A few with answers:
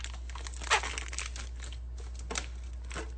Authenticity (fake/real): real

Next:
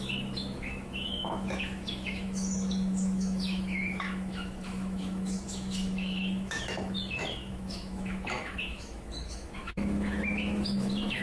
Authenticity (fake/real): fake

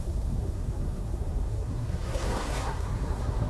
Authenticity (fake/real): fake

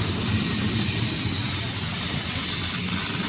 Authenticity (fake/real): real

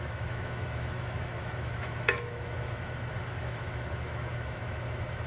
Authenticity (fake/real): fake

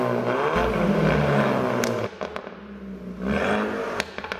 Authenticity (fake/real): real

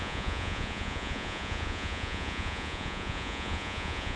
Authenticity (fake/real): fake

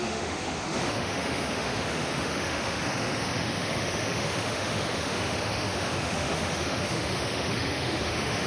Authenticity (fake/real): fake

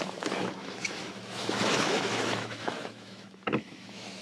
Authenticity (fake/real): fake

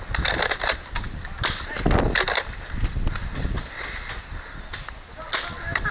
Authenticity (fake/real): real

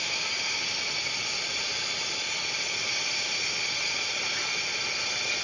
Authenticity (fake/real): real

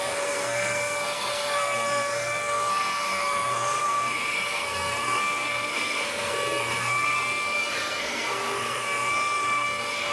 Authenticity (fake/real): fake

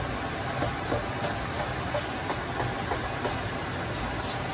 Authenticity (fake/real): real